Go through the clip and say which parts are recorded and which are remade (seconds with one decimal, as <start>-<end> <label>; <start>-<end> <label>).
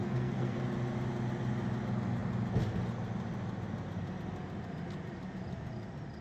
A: 0.0-0.6 remade; 0.6-6.2 recorded